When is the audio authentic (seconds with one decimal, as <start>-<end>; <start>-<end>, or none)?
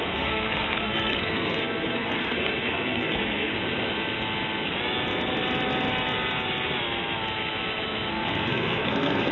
3.5-8.1